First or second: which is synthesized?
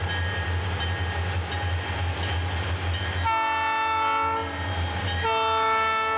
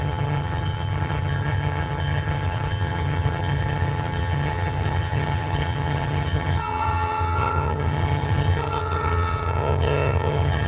second